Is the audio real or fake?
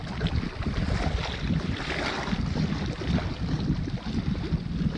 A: real